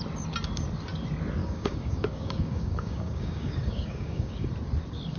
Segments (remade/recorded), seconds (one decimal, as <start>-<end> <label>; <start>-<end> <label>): 0.0-1.4 recorded; 1.4-4.5 remade; 4.5-5.2 recorded